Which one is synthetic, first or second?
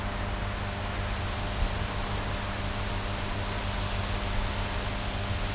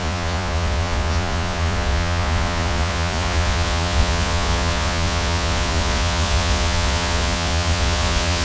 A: second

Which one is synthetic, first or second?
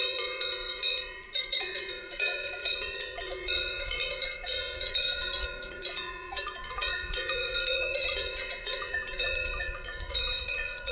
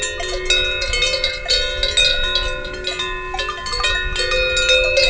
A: first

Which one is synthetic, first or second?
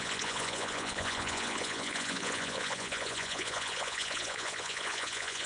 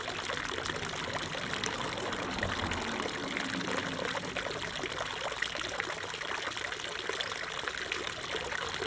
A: first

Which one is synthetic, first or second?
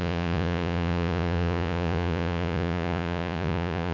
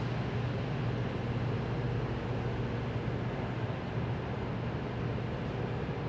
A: first